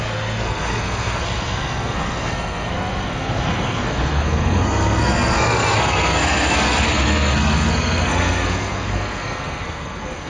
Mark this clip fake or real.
fake